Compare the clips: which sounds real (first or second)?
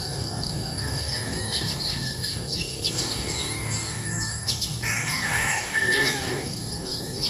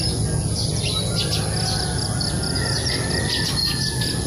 second